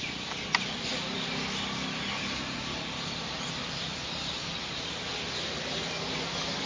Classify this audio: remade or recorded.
recorded